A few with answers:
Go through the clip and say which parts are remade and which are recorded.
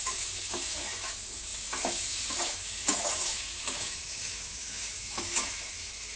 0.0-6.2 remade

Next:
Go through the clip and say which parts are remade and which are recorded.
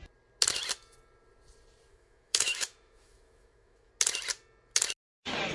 0.0-1.9 recorded; 1.9-3.9 remade; 3.9-5.5 recorded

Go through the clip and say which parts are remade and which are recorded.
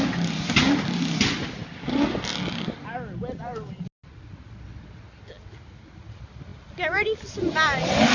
0.0-8.1 recorded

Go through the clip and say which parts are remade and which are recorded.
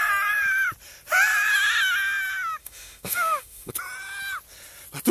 0.0-2.6 recorded; 2.6-3.7 remade; 3.7-5.1 recorded